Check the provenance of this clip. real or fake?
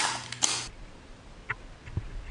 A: real